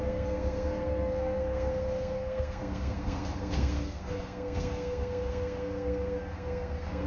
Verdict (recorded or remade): remade